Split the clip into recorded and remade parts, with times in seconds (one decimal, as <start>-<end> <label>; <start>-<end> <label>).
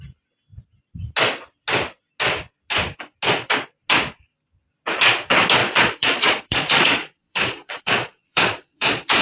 0.0-5.6 recorded; 5.6-9.2 remade